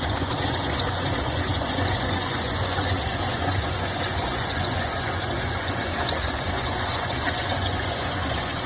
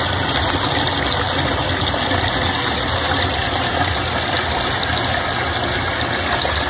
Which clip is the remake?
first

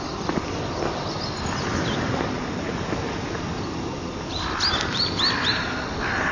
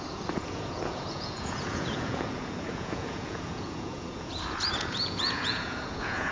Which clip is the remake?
second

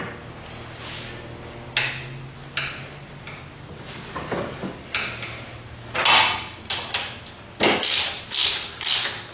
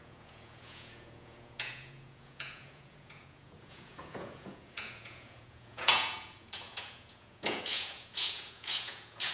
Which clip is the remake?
second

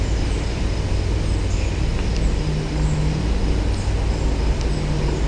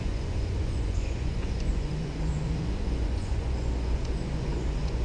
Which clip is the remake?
second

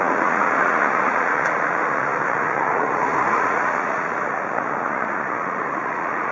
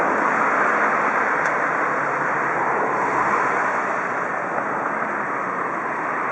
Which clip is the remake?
first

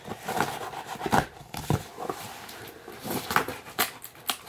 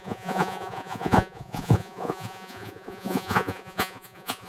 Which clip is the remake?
second